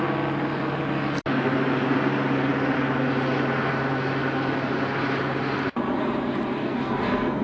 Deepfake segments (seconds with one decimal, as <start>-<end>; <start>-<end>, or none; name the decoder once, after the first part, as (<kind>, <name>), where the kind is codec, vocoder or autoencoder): 6.6-7.4 (codec, SNAC)